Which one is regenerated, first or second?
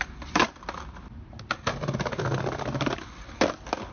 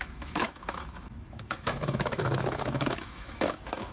second